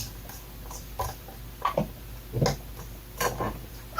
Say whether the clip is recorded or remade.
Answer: recorded